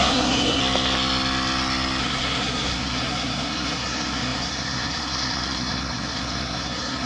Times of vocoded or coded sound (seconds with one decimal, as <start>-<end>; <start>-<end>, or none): 0.0-0.6; 2.0-7.1

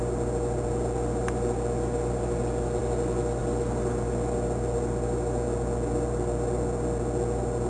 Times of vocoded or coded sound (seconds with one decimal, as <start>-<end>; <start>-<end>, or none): none

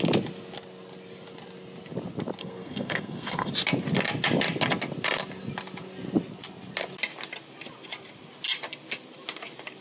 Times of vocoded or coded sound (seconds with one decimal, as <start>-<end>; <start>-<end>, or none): 2.4-3.5

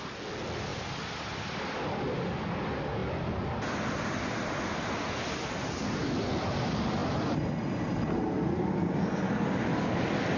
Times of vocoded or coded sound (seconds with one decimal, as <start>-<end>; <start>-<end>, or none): none